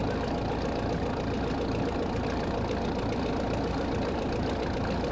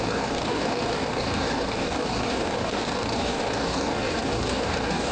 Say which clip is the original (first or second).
first